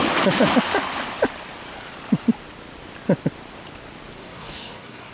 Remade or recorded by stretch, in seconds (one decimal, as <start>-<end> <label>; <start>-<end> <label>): 0.0-4.2 recorded; 4.2-5.1 remade